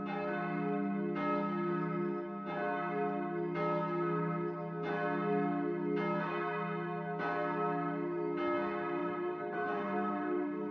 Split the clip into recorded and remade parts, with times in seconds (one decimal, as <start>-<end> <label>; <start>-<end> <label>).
0.0-9.0 recorded; 9.0-10.7 remade